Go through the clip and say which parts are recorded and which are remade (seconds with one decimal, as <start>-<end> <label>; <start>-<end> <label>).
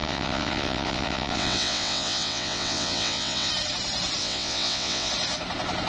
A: 0.0-3.5 remade; 3.5-4.2 recorded; 4.2-5.1 remade; 5.1-5.9 recorded